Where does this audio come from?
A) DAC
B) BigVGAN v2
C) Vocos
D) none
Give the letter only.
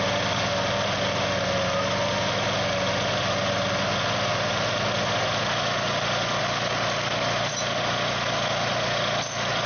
D